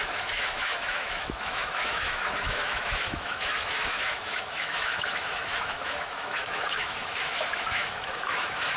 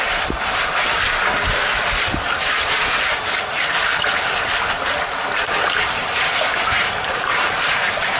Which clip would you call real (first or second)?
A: second